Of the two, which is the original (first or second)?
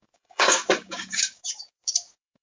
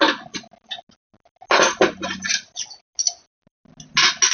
second